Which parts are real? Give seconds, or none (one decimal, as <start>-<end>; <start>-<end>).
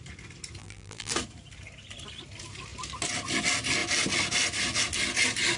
0.0-0.6; 1.1-5.6